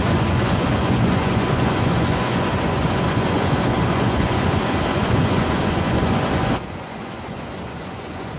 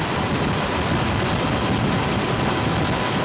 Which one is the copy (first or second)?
first